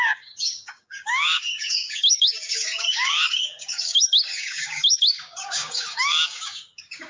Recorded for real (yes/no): no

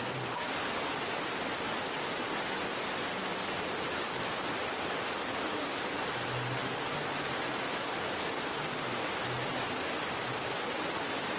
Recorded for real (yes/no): yes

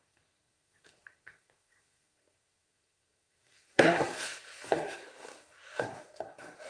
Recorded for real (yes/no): no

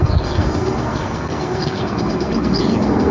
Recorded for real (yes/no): no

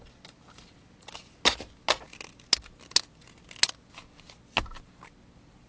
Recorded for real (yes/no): yes